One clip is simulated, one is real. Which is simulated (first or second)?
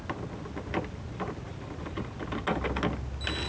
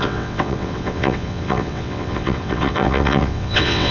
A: second